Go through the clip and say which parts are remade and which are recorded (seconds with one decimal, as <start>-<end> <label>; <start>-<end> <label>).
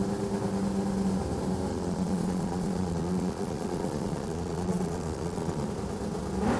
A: 0.0-1.7 recorded; 1.7-5.7 remade; 5.7-6.6 recorded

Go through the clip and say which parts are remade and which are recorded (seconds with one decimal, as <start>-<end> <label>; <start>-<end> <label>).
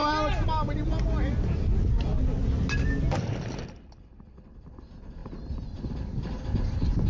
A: 0.0-7.1 recorded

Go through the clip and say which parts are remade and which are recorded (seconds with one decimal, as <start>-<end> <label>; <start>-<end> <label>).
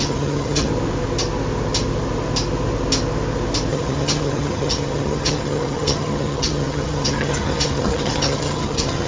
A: 0.0-0.7 remade; 0.7-3.7 recorded; 3.7-9.1 remade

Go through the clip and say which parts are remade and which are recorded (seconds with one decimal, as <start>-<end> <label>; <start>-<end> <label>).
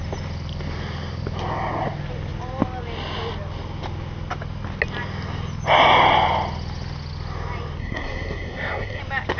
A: 0.0-7.8 recorded; 7.8-9.0 remade; 9.0-9.4 recorded